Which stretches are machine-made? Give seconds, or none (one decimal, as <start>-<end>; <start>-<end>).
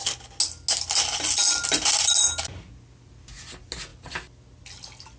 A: none